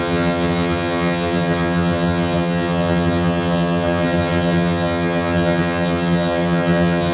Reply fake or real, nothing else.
fake